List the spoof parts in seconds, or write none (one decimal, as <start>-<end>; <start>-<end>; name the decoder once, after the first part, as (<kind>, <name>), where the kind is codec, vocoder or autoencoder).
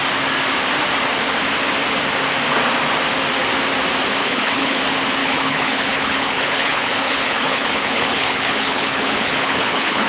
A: 4.2-4.8 (codec, HILCodec); 5.2-10.1